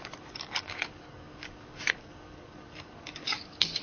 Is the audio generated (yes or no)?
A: yes